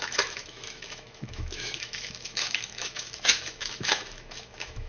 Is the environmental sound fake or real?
fake